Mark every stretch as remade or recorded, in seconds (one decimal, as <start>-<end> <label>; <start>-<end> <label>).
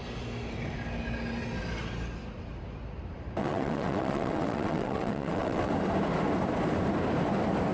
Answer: 0.0-3.4 recorded; 3.4-5.7 remade; 5.7-7.7 recorded